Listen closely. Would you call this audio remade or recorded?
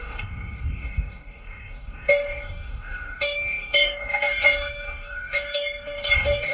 remade